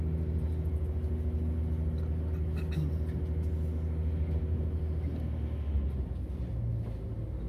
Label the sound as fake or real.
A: real